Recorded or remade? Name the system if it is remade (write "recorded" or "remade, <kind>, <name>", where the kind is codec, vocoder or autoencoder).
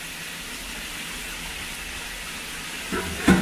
remade, vocoder, BigVGAN v2